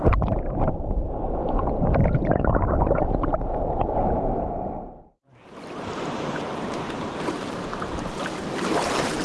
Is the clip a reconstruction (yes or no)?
yes